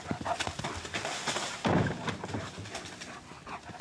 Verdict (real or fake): real